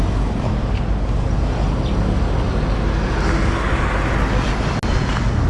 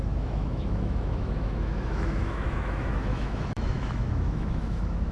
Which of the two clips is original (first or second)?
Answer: first